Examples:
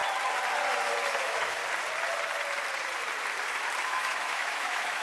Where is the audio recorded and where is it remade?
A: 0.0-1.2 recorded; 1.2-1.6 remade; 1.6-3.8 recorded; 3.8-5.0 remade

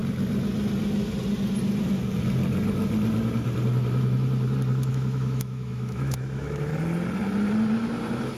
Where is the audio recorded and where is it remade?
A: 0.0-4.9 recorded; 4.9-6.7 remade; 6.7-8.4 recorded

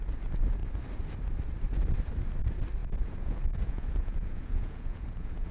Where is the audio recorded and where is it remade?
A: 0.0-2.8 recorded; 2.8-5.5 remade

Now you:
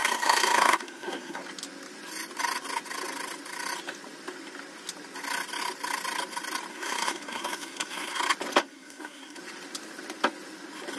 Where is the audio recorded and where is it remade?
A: 0.0-1.4 remade; 1.4-6.7 recorded; 6.7-8.2 remade; 8.2-8.6 recorded; 8.6-9.4 remade; 9.4-11.0 recorded

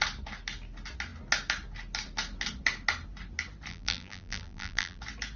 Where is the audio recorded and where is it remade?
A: 0.0-3.7 recorded; 3.7-5.0 remade; 5.0-5.4 recorded

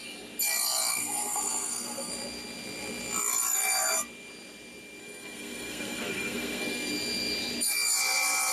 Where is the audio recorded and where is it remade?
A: 0.0-0.9 recorded; 0.9-2.1 remade; 2.1-5.0 recorded; 5.0-6.9 remade; 6.9-8.5 recorded

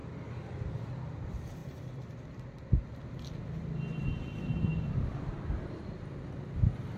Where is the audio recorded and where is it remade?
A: 0.0-1.6 recorded; 1.6-2.1 remade; 2.1-4.7 recorded; 4.7-5.3 remade; 5.3-7.0 recorded